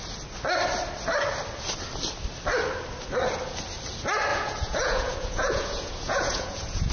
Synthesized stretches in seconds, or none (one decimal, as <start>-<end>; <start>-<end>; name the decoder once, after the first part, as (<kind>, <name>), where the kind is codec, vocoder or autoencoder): 4.3-6.9 (vocoder, Vocos)